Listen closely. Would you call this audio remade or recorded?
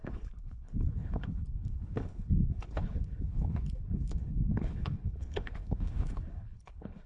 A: remade